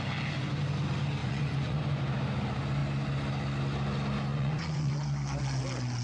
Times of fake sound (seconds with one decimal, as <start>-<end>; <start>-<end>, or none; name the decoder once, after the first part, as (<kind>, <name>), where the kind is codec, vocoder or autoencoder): 1.2-2.0 (vocoder, Vocos); 4.3-4.9